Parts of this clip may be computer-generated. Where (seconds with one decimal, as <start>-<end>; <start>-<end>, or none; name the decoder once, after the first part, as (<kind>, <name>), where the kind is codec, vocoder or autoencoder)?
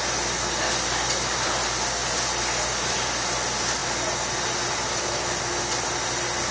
none